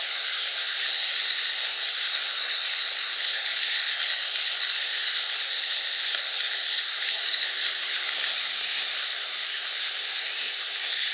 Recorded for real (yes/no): no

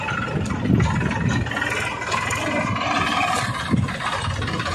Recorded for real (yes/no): yes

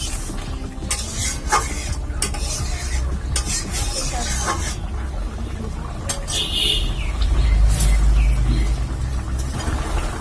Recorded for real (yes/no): yes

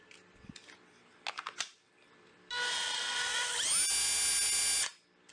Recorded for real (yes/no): yes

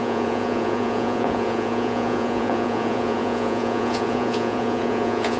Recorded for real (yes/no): no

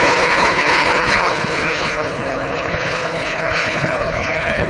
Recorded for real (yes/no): no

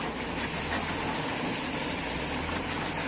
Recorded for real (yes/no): yes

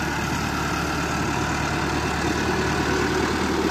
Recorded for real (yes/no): yes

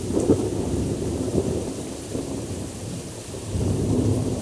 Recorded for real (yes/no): no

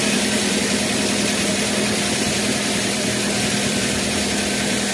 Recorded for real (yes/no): no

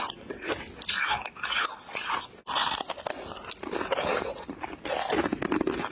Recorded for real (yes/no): yes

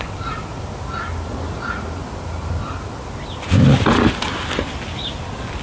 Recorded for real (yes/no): yes